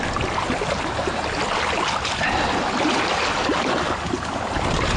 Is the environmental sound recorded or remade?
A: recorded